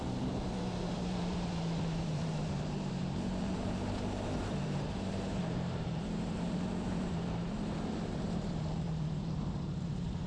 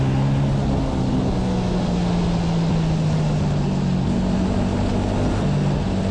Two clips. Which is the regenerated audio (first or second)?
first